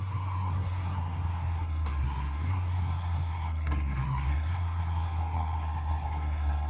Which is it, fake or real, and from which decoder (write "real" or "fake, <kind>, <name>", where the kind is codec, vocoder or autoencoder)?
fake, codec, SNAC